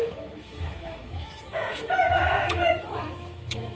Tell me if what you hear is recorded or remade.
remade